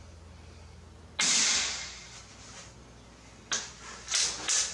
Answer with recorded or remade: recorded